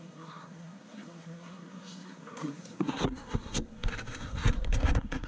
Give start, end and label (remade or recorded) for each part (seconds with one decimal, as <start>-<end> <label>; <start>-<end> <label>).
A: 0.0-5.3 remade